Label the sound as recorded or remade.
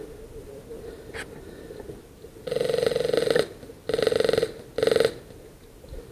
recorded